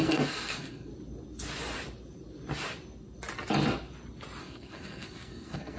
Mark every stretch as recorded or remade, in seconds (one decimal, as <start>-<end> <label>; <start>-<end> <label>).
0.0-0.9 remade; 0.9-4.4 recorded; 4.4-5.8 remade